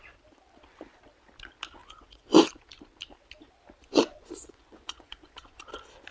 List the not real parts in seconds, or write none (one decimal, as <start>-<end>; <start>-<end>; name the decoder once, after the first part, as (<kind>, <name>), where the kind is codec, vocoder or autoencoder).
1.8-2.7 (vocoder, Vocos); 3.8-5.6